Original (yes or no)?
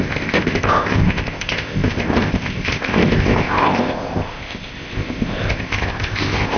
no